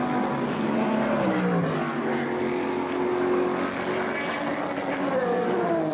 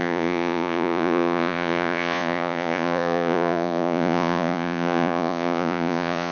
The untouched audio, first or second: first